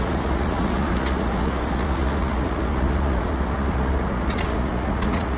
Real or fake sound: fake